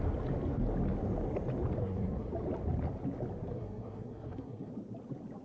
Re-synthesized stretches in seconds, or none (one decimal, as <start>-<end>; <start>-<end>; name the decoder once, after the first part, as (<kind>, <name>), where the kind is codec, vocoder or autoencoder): 1.8-2.3 (codec, SNAC); 3.5-4.7